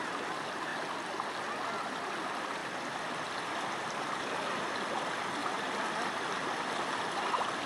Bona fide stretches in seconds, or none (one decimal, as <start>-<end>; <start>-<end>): 0.0-2.6; 4.2-5.4; 7.0-7.7